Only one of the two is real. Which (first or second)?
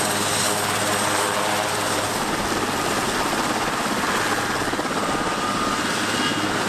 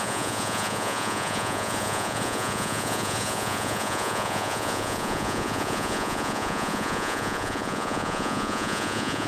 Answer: first